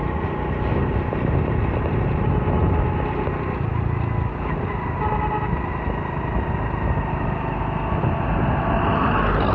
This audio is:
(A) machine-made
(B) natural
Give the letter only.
B